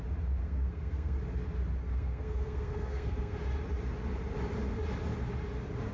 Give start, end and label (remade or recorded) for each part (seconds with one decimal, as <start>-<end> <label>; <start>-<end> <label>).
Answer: 0.0-0.4 recorded; 0.4-1.2 remade; 1.2-1.8 recorded; 1.8-3.4 remade; 3.4-5.9 recorded